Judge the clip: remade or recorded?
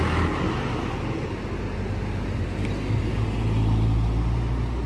recorded